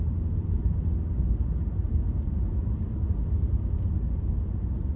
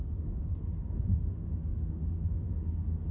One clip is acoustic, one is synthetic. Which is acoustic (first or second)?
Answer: first